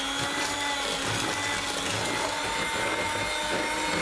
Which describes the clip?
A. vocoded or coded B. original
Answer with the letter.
B